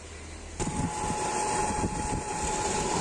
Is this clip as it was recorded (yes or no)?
yes